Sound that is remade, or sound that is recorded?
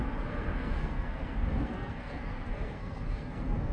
remade